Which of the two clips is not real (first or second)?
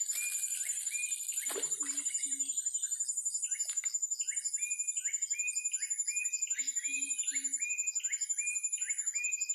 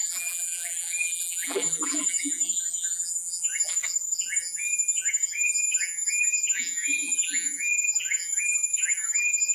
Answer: second